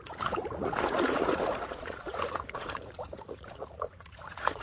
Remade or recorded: remade